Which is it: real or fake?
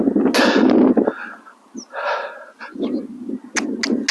real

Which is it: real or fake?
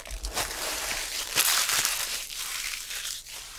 fake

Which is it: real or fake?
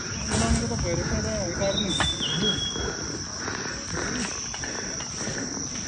real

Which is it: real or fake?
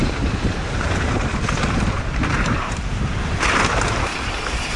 fake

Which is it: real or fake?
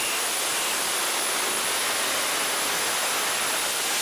real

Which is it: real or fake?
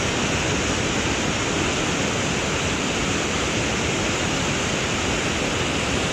real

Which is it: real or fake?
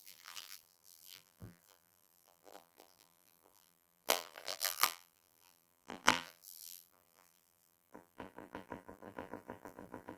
fake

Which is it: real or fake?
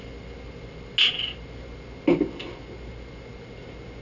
real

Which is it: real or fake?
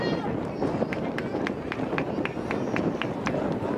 real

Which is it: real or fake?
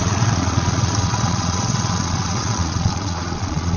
fake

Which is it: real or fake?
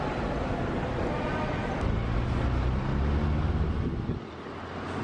real